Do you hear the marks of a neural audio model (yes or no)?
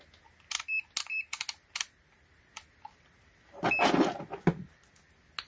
no